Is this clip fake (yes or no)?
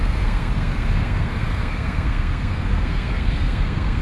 yes